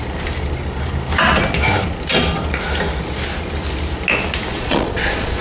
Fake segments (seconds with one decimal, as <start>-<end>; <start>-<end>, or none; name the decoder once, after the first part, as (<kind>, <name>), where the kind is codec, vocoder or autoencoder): 4.5-5.4 (vocoder, Vocos)

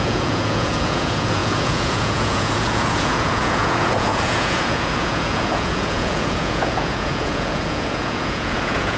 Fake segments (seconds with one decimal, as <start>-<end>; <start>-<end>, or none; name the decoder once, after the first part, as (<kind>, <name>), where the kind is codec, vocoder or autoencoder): 0.0-9.0 (vocoder, Vocos)